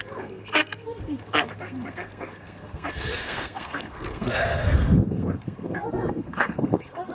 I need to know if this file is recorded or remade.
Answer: remade